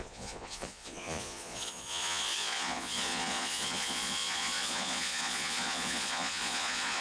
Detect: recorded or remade remade